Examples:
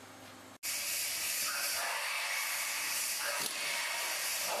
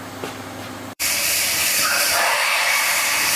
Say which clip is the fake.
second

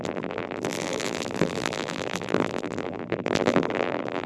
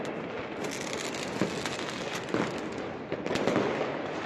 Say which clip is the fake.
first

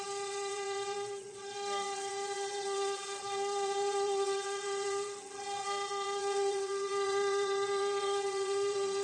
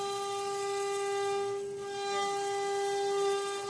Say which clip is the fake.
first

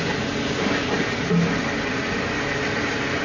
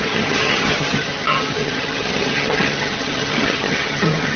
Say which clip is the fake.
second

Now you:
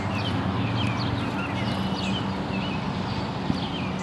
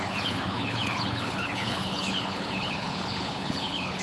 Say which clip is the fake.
second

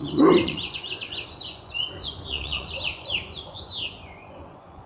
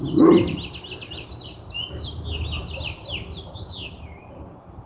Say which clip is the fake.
first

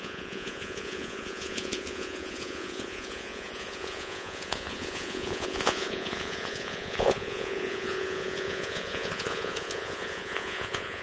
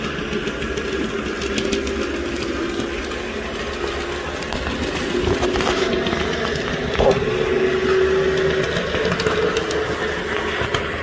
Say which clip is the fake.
first